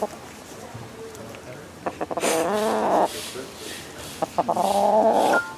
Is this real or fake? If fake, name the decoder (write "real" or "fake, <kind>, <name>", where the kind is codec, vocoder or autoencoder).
real